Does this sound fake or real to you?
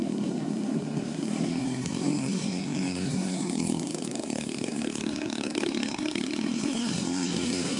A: fake